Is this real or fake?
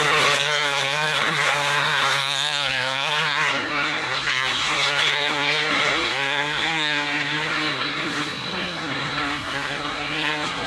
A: fake